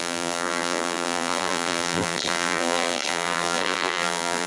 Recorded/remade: remade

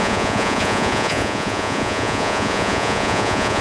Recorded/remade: remade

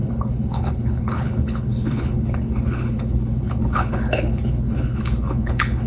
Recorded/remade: remade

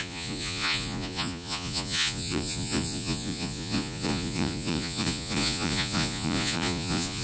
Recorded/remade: remade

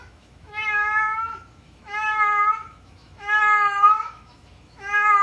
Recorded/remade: remade